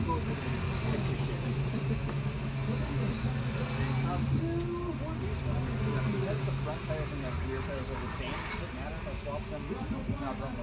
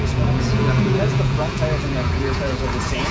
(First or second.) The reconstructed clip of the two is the second